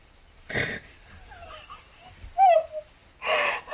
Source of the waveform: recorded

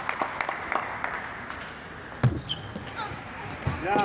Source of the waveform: recorded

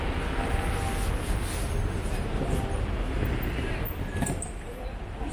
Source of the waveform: recorded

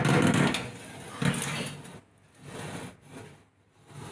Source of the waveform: recorded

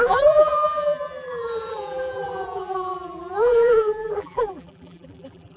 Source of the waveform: remade